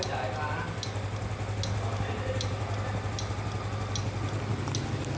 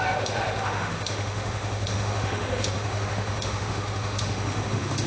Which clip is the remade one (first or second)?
second